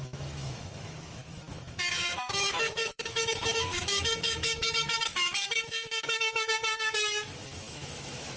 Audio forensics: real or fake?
fake